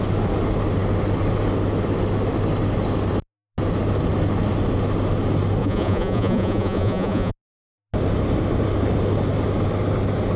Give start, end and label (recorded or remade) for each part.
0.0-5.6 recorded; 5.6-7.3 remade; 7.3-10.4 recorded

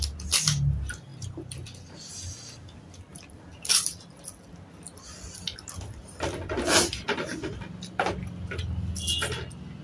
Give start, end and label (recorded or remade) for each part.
0.0-1.1 recorded; 1.1-2.1 remade; 2.1-3.1 recorded; 3.1-4.1 remade; 4.1-7.3 recorded; 7.3-8.1 remade; 8.1-9.8 recorded

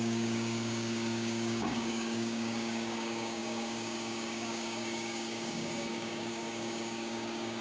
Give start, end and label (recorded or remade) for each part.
0.0-7.6 remade

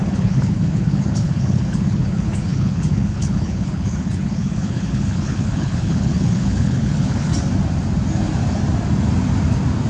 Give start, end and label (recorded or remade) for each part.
0.0-7.3 remade; 7.3-9.9 recorded